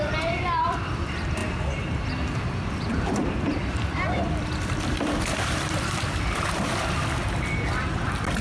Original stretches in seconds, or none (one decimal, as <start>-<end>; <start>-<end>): 1.4-2.7